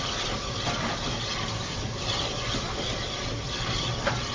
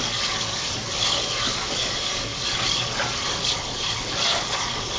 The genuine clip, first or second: first